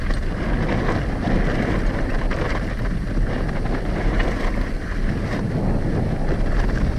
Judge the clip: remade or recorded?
recorded